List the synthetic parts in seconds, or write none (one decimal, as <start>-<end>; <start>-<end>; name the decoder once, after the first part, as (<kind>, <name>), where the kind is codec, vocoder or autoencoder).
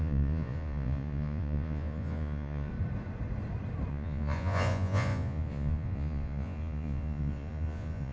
0.0-2.7 (vocoder, Vocos); 3.9-8.1